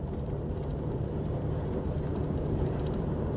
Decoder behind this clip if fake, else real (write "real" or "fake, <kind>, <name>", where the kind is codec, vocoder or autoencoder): fake, vocoder, BigVGAN v2